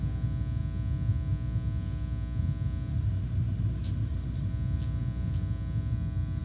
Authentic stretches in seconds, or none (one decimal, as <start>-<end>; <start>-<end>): 0.0-2.9; 4.5-6.4